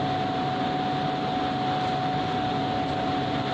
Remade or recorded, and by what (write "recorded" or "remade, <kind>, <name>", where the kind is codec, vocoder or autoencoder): recorded